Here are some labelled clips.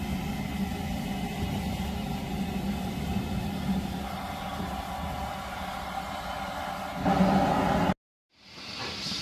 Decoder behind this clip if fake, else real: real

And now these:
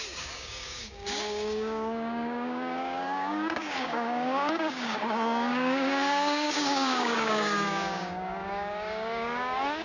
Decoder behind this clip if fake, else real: fake, codec, DAC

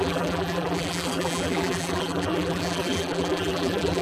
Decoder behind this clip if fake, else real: fake, vocoder, BigVGAN v2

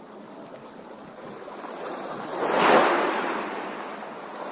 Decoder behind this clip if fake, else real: real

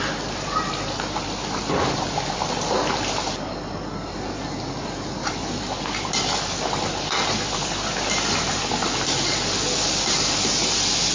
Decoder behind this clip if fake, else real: real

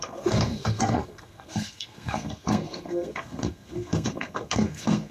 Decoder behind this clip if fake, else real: fake, codec, SNAC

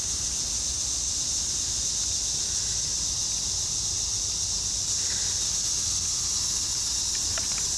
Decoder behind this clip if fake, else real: real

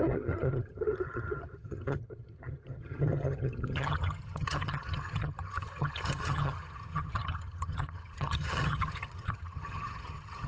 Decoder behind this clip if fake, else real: fake, vocoder, HiFi-GAN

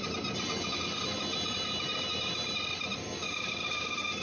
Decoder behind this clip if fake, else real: real